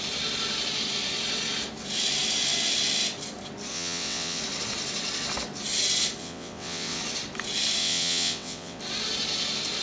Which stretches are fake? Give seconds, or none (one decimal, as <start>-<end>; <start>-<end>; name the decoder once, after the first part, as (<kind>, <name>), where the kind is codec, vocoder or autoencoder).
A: 3.7-4.4 (vocoder, WaveNeXt); 6.2-7.0; 7.8-8.8